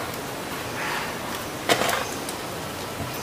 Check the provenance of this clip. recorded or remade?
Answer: recorded